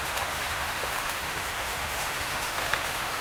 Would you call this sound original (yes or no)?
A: no